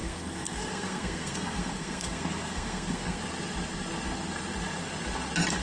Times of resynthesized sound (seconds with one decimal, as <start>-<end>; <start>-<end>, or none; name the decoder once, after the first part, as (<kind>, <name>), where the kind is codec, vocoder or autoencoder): 0.0-3.2 (codec, SNAC)